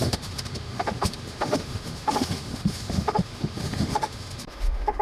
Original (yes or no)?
no